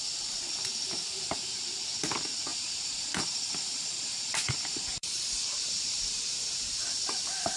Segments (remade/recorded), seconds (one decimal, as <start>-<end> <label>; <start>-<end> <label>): 0.0-2.5 recorded; 2.5-6.5 remade; 6.5-7.6 recorded